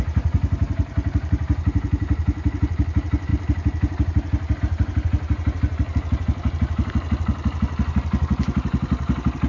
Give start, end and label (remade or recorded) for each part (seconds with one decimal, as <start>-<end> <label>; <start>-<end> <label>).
0.0-9.5 recorded